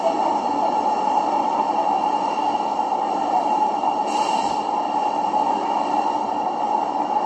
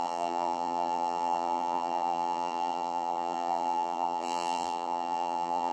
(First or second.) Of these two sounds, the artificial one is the second